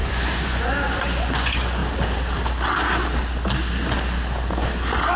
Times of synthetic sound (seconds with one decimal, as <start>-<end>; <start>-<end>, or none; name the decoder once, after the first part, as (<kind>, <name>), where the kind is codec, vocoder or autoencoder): 0.0-1.8 (vocoder, Vocos)